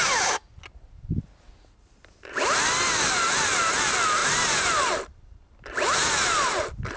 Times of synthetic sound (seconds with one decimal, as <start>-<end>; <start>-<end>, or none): none